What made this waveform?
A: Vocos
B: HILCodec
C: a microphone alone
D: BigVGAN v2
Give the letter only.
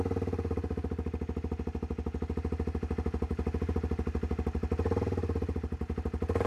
C